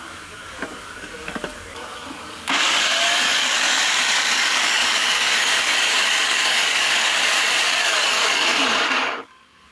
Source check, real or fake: fake